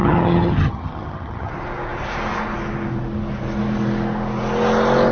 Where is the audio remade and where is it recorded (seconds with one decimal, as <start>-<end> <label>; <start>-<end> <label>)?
0.0-1.5 remade; 1.5-5.1 recorded

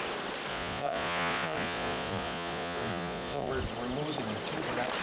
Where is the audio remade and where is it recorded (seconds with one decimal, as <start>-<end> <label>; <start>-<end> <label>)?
0.0-0.5 recorded; 0.5-3.5 remade; 3.5-5.0 recorded

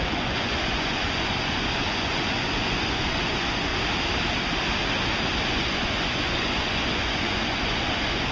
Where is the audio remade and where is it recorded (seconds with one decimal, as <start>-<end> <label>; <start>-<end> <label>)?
0.0-3.7 remade; 3.7-5.5 recorded; 5.5-8.3 remade

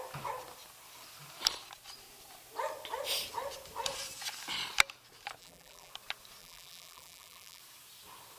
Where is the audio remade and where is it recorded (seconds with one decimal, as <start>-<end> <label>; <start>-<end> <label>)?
0.0-5.4 recorded; 5.4-5.9 remade; 5.9-6.4 recorded; 6.4-7.6 remade; 7.6-8.4 recorded

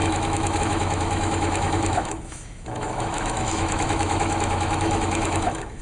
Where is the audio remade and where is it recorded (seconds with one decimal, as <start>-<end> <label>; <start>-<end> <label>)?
0.0-5.8 remade